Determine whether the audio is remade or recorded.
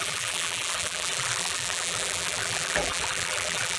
remade